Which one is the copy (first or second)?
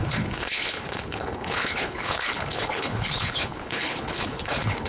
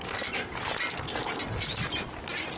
first